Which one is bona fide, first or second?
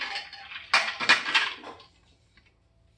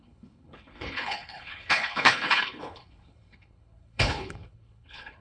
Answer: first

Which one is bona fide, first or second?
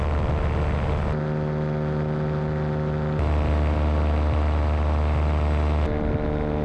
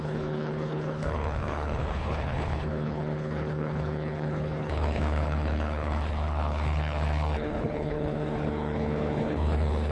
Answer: first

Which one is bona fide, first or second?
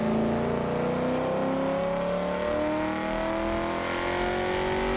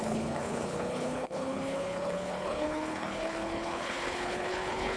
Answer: first